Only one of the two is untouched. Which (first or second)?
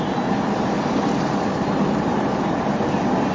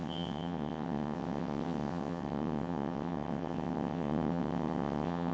first